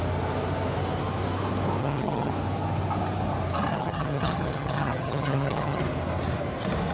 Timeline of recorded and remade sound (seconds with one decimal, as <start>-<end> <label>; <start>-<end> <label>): 0.0-1.8 recorded; 1.8-2.3 remade; 2.3-3.7 recorded; 3.7-5.8 remade; 5.8-6.9 recorded